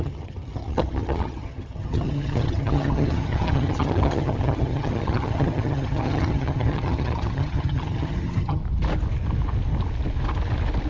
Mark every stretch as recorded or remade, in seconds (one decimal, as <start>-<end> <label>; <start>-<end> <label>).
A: 0.0-8.6 remade; 8.6-10.9 recorded